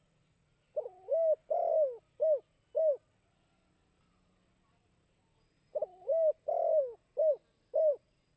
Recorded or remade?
recorded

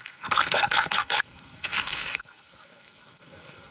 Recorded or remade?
remade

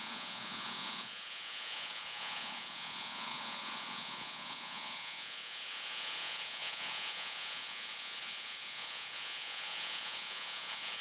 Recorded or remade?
remade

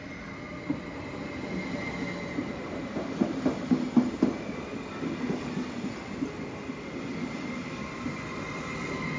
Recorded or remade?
recorded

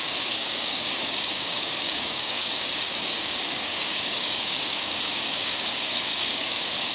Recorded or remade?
remade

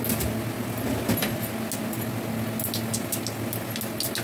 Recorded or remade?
recorded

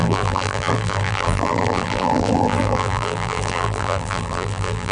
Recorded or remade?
remade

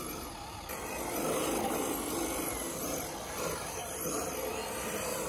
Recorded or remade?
recorded